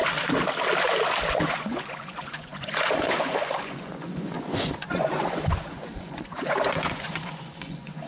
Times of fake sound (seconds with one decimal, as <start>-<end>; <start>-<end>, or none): 1.3-8.1